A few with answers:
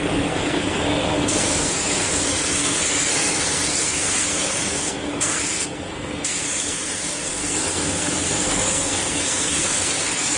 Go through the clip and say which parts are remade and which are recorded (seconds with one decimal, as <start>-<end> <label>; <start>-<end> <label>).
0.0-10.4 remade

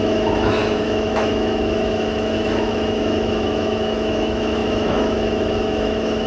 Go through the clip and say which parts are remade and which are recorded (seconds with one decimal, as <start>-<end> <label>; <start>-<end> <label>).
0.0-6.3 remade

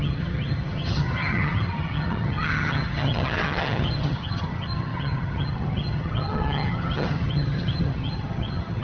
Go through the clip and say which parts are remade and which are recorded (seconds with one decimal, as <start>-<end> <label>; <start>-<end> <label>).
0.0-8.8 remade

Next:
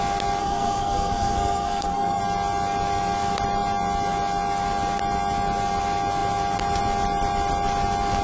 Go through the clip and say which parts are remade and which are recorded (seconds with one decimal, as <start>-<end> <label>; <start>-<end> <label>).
0.0-0.4 recorded; 0.4-2.2 remade; 2.2-8.2 recorded

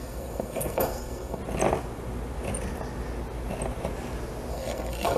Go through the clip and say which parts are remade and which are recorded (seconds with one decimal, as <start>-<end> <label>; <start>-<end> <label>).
0.0-1.4 remade; 1.4-4.5 recorded; 4.5-5.2 remade

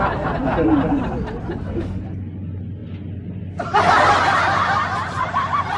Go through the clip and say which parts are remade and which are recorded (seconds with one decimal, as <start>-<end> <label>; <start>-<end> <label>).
0.0-5.8 recorded

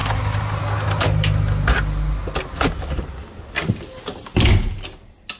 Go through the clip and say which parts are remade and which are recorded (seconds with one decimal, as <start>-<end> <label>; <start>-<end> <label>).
0.0-5.4 recorded

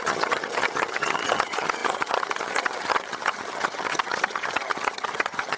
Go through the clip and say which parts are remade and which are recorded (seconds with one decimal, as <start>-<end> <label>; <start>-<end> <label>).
0.0-5.6 remade